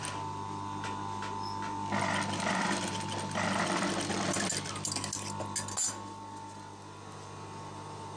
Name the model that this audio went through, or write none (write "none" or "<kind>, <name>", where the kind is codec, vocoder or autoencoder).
none